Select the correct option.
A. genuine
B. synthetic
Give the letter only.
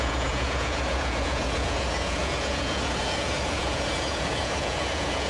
B